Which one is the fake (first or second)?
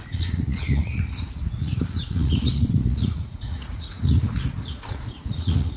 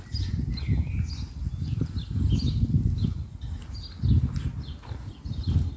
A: first